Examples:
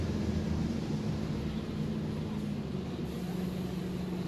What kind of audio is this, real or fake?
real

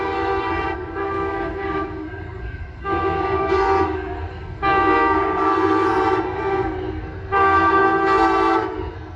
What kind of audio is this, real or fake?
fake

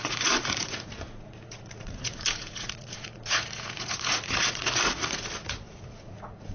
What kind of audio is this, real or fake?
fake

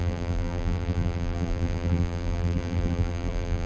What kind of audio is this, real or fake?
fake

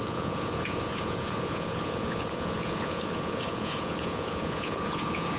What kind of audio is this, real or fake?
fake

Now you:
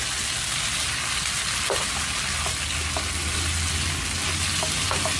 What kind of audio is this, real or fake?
real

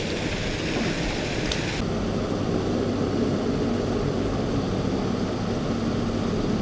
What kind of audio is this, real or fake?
real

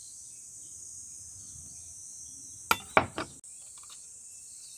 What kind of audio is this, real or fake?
real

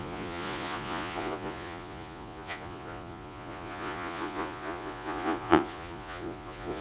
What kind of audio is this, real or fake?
fake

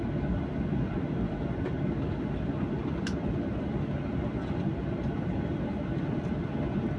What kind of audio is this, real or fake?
real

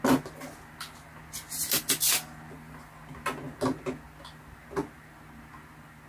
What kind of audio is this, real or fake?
real